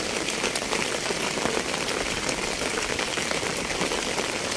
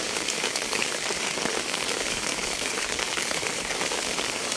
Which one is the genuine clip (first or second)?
first